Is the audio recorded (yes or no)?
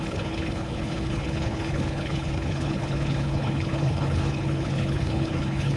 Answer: no